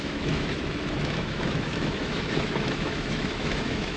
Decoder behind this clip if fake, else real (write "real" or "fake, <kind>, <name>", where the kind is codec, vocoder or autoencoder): fake, autoencoder, DAC-VAE